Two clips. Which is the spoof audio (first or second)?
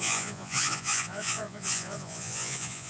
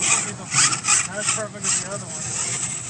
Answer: first